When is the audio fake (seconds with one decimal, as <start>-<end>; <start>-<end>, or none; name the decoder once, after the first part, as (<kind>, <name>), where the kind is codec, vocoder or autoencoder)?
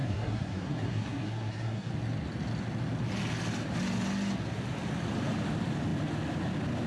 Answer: 0.0-1.9 (codec, SNAC)